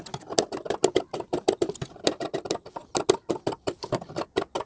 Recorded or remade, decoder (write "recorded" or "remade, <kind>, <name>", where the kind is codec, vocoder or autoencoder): recorded